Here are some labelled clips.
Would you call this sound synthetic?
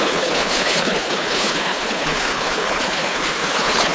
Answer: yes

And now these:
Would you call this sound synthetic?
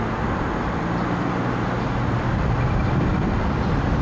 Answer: no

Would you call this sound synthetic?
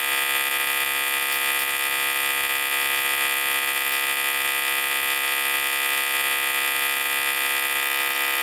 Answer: no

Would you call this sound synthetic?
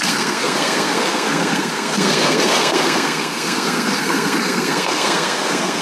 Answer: yes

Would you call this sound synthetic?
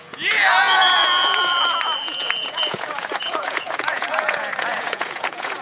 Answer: yes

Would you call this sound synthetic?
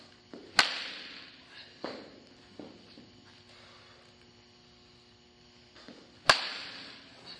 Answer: no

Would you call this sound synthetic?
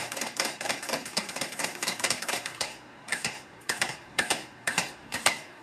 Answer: yes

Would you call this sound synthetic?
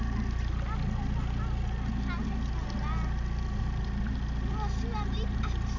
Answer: no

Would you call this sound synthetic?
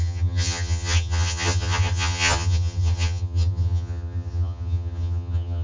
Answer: yes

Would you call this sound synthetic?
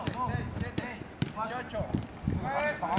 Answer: no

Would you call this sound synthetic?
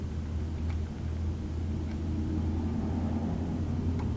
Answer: no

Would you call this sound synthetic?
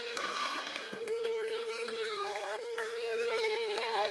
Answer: yes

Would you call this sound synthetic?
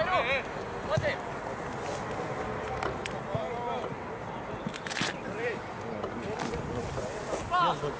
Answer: no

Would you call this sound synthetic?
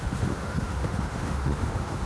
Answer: yes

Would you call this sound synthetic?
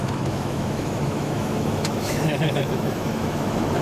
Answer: yes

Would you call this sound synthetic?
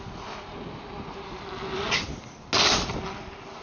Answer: no